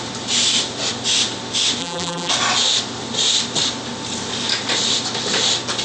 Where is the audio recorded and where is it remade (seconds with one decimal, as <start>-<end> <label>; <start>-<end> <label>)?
0.0-1.8 recorded; 1.8-2.3 remade; 2.3-5.8 recorded